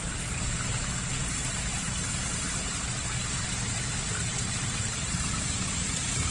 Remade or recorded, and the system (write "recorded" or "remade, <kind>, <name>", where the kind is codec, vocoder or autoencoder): remade, vocoder, BigVGAN v2